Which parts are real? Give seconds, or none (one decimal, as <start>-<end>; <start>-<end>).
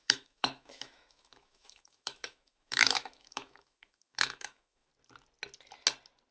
4.9-6.3